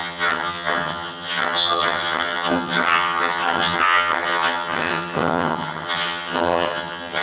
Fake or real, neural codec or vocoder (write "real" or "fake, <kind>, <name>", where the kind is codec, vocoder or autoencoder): fake, vocoder, HiFi-GAN